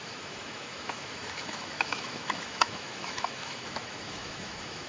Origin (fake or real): fake